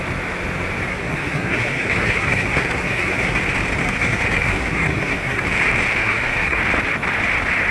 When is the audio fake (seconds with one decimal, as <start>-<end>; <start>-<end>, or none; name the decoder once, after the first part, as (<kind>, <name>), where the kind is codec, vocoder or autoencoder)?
0.9-3.4 (codec, SNAC); 3.8-5.4; 6.0-6.6